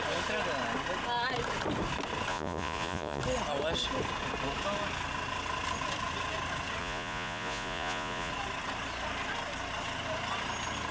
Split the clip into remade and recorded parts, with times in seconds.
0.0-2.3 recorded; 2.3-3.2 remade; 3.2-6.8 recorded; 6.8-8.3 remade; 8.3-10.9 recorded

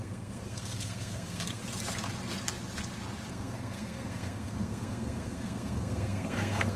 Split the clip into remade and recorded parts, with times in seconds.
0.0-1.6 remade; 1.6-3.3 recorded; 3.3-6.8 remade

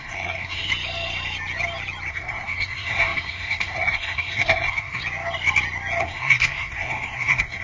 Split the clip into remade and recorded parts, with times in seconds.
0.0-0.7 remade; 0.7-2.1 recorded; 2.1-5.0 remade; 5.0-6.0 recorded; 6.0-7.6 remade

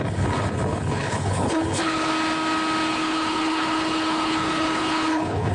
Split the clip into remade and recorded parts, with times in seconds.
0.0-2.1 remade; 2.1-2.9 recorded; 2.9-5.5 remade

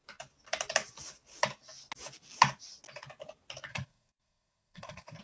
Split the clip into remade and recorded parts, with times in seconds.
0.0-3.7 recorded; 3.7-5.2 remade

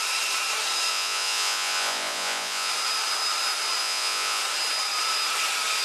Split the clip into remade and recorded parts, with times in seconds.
0.0-0.9 recorded; 0.9-2.7 remade; 2.7-3.8 recorded; 3.8-4.4 remade; 4.4-5.8 recorded

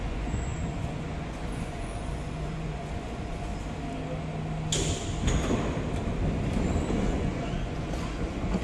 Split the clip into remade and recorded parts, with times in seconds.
0.0-3.5 remade; 3.5-7.0 recorded; 7.0-8.6 remade

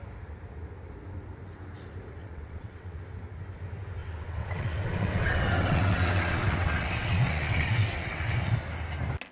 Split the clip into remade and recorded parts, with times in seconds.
0.0-2.2 recorded; 2.2-3.0 remade; 3.0-4.0 recorded; 4.0-8.5 remade; 8.5-9.3 recorded